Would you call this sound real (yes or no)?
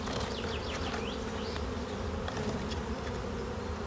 yes